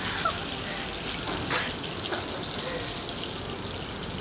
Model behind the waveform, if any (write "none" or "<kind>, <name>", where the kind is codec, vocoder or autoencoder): none